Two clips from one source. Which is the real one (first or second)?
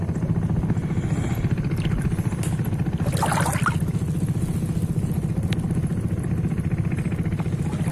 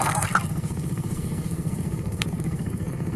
first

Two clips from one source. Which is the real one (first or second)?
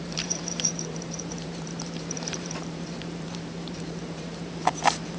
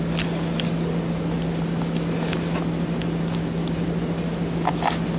second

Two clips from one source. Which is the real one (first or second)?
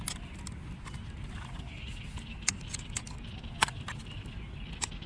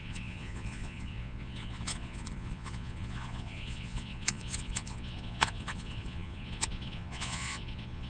first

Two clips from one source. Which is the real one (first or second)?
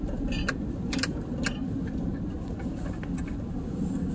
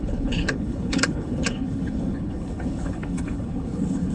first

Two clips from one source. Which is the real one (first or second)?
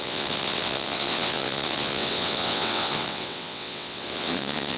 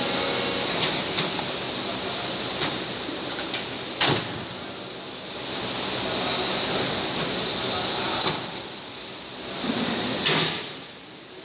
second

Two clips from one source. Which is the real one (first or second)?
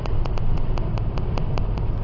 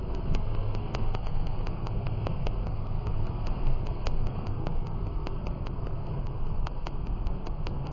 first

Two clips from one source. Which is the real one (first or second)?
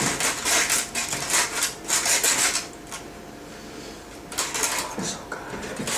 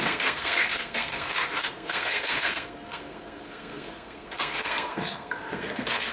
first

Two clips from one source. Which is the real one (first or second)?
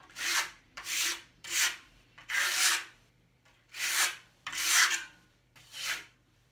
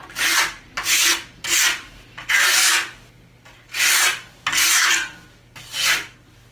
second